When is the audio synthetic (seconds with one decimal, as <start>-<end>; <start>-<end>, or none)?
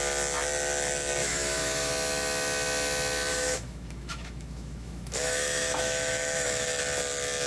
1.2-1.9; 3.3-6.8